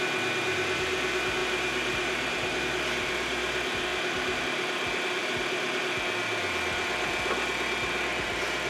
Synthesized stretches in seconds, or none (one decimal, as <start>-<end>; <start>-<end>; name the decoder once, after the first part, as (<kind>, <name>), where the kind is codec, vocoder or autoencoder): 1.4-2.6 (vocoder, BigVGAN v2); 3.9-4.4